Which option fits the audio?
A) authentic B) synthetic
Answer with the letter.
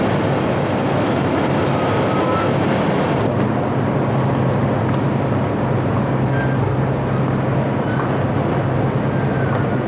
A